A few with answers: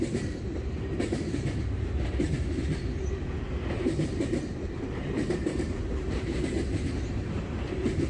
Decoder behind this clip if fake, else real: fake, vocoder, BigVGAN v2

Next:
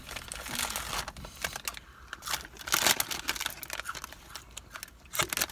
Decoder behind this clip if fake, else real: real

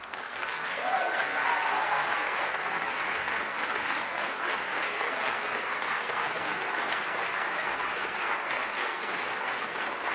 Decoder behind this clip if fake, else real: fake, codec, SNAC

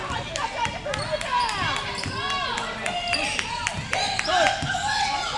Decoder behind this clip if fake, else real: real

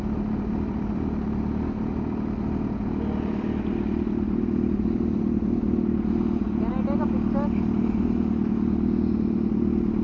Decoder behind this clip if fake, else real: real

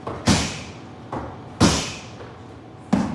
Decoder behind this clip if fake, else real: real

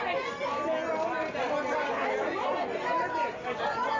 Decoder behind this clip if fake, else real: real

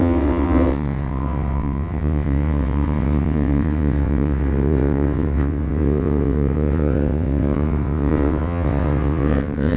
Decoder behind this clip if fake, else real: fake, vocoder, WaveNeXt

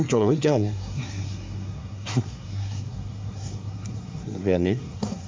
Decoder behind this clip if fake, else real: fake, codec, SNAC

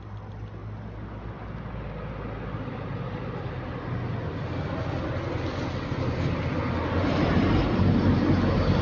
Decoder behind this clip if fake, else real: real